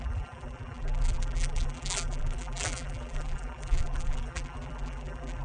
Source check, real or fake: fake